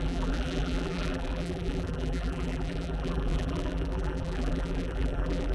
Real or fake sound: fake